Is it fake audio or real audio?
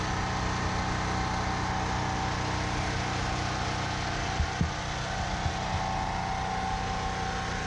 real